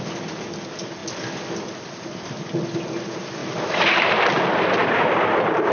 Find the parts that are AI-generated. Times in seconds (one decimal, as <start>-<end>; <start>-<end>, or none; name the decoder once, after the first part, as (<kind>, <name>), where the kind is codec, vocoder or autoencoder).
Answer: 3.4-4.2 (vocoder, BigVGAN v2); 4.8-5.7